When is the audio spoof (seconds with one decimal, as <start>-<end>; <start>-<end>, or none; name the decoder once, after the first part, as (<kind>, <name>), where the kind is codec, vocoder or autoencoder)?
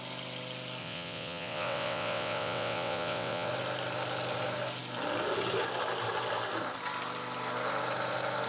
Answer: 0.8-3.5 (vocoder, WaveNeXt)